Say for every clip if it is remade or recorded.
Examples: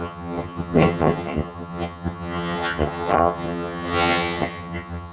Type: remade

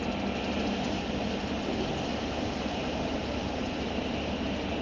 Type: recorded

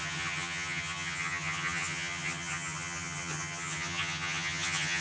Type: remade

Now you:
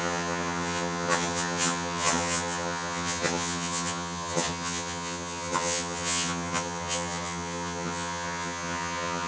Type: remade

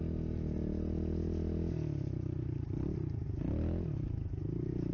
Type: recorded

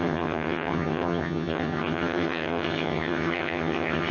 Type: remade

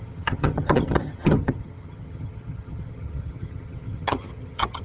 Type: remade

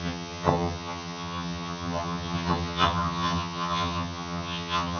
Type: remade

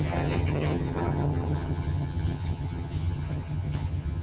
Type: remade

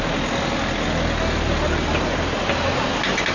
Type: recorded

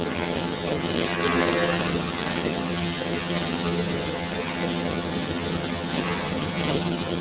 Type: remade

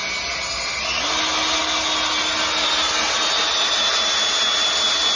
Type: recorded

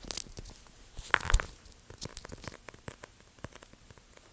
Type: recorded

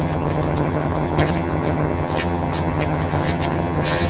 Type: remade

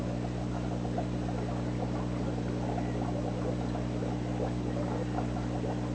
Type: recorded